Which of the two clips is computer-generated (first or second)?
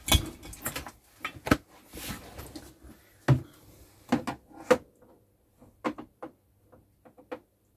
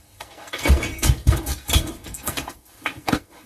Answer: second